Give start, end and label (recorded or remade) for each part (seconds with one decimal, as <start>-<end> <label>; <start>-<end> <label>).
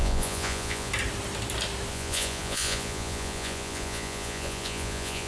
0.0-0.9 remade; 0.9-1.9 recorded; 1.9-5.3 remade